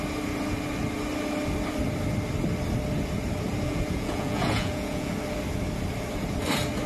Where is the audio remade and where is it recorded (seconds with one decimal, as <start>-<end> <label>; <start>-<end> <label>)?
0.0-3.7 recorded; 3.7-5.1 remade; 5.1-6.9 recorded